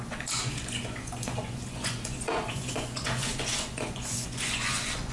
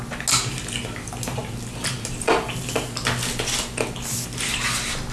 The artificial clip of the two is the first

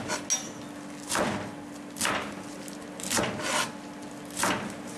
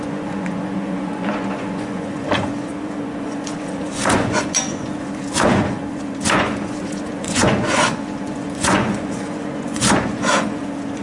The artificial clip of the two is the second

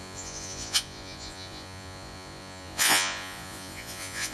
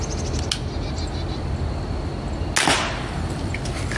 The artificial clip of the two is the first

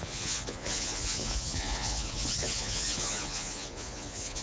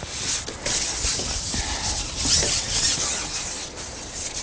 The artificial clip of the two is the first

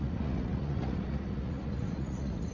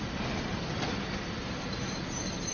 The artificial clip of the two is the first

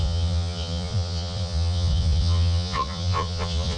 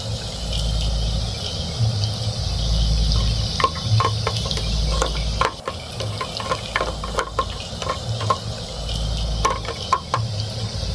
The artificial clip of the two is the first